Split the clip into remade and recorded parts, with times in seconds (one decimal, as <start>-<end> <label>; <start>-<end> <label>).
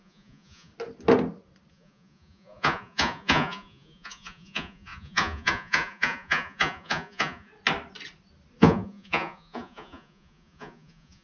0.0-0.7 remade; 0.7-1.7 recorded; 1.7-7.5 remade; 7.5-8.6 recorded; 8.6-11.2 remade